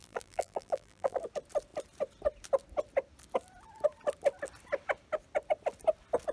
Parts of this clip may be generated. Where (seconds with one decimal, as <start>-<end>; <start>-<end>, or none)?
0.0-1.2